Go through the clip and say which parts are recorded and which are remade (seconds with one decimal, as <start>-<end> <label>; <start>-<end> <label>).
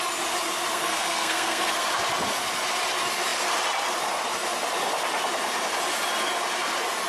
0.0-0.7 recorded; 0.7-1.9 remade; 1.9-7.1 recorded